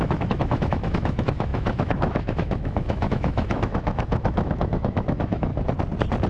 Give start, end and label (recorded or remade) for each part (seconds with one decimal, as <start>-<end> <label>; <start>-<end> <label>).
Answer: 0.0-5.5 remade; 5.5-6.3 recorded